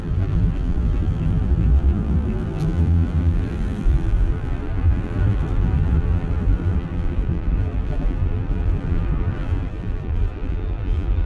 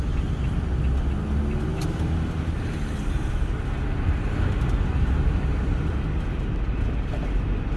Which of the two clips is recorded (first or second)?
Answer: second